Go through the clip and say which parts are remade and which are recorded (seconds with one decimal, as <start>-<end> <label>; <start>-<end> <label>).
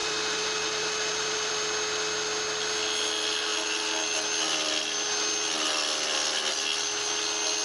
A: 0.0-1.5 remade; 1.5-7.6 recorded